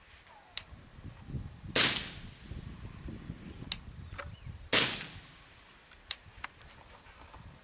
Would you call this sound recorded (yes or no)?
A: yes